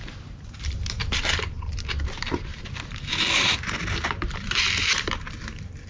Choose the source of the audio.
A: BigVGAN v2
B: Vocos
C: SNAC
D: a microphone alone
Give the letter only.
A